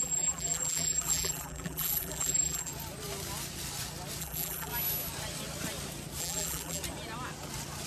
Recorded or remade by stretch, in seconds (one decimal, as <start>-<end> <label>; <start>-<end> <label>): 0.0-2.7 remade; 2.7-4.2 recorded; 4.2-4.7 remade; 4.7-6.2 recorded; 6.2-6.8 remade; 6.8-7.9 recorded